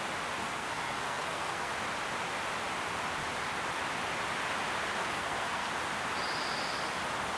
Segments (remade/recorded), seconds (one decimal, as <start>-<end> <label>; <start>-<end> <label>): 0.0-0.4 recorded; 0.4-1.7 remade; 1.7-5.0 recorded; 5.0-5.7 remade; 5.7-7.4 recorded